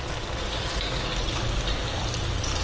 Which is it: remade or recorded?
recorded